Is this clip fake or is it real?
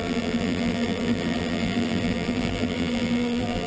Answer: fake